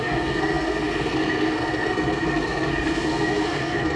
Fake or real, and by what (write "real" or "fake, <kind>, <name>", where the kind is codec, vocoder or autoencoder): fake, codec, SNAC